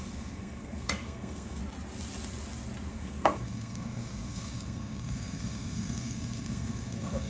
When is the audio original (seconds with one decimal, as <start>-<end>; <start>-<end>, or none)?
1.6-2.9